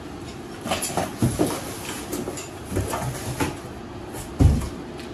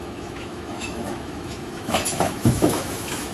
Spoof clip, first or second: second